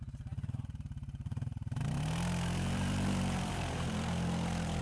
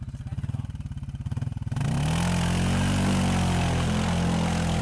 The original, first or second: second